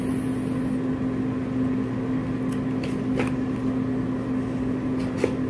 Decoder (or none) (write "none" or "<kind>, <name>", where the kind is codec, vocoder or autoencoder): none